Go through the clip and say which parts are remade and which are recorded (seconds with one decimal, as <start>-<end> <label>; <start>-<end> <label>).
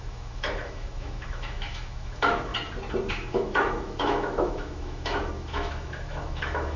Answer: 0.0-2.5 remade; 2.5-3.1 recorded; 3.1-6.8 remade